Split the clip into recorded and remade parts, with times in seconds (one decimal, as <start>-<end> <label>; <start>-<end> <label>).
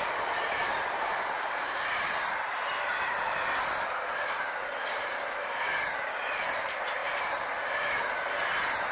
0.0-8.9 recorded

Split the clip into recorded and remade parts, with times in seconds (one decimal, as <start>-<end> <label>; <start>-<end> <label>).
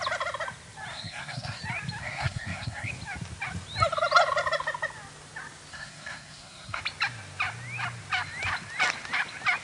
0.0-0.9 recorded; 0.9-1.6 remade; 1.6-2.0 recorded; 2.0-2.9 remade; 2.9-5.7 recorded; 5.7-6.8 remade; 6.8-9.6 recorded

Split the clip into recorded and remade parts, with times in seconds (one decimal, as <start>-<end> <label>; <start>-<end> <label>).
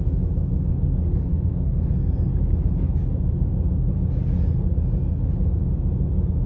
0.0-1.3 recorded; 1.3-2.1 remade; 2.1-6.5 recorded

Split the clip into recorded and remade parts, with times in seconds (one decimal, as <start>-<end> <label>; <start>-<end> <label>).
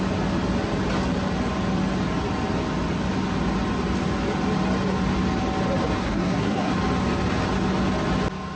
0.0-6.0 recorded; 6.0-6.7 remade; 6.7-8.6 recorded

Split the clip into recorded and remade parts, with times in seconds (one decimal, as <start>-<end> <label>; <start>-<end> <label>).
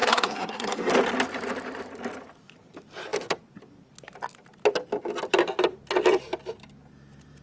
0.0-0.9 remade; 0.9-7.4 recorded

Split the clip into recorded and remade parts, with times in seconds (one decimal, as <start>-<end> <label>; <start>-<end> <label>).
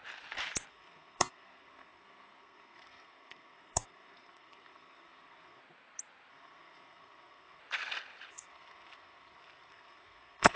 0.0-0.7 recorded; 0.7-5.6 remade; 5.6-6.3 recorded; 6.3-7.6 remade; 7.6-8.3 recorded; 8.3-10.6 remade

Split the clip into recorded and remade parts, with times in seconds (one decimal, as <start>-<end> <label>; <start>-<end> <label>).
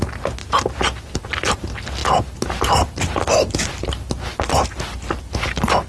0.0-5.9 recorded